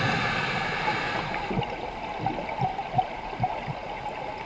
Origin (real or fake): real